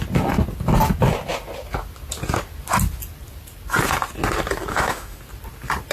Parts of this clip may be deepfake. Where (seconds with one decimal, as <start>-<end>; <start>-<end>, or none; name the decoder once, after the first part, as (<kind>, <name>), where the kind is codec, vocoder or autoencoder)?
4.7-5.2 (autoencoder, DAC-VAE)